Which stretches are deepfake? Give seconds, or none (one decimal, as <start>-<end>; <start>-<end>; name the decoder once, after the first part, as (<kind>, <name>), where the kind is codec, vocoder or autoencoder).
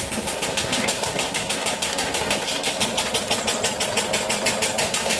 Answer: 0.0-2.8 (codec, SNAC); 4.8-5.2